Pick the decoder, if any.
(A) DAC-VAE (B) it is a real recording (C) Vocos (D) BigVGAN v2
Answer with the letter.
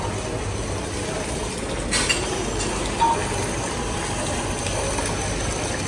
B